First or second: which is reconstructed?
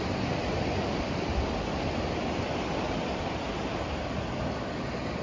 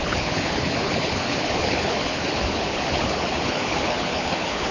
second